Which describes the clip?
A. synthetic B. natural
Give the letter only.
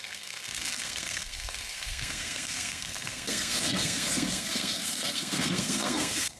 A